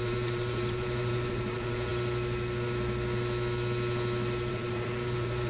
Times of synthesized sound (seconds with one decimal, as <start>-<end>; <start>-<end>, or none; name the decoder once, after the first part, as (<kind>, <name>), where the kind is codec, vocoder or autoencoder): 0.0-1.9 (vocoder, BigVGAN v2); 4.5-5.5